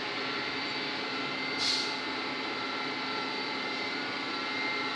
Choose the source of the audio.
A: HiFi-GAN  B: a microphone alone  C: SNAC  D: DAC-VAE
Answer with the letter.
B